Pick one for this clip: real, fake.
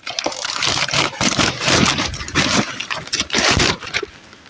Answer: fake